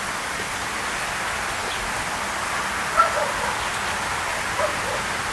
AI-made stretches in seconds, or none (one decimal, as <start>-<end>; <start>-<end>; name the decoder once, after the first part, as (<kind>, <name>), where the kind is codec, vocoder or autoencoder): 4.3-4.8 (vocoder, BigVGAN v2)